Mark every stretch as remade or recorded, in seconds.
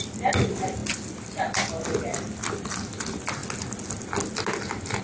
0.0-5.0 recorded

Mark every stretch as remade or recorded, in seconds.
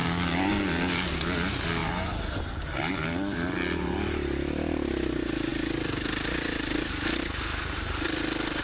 0.0-5.5 recorded; 5.5-8.2 remade; 8.2-8.6 recorded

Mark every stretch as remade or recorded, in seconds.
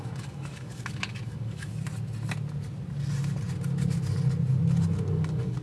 0.0-1.7 remade; 1.7-5.1 recorded; 5.1-5.6 remade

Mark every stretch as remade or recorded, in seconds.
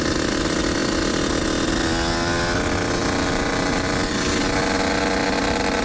0.0-3.0 recorded; 3.0-3.9 remade; 3.9-5.8 recorded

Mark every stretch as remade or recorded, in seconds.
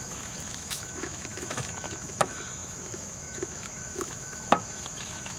0.0-5.4 remade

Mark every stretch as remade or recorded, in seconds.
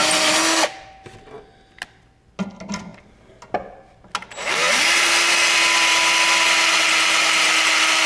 0.0-8.1 recorded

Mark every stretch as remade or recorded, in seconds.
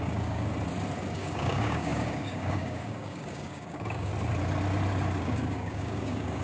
0.0-0.5 remade; 0.5-1.1 recorded; 1.1-4.1 remade; 4.1-5.2 recorded; 5.2-6.4 remade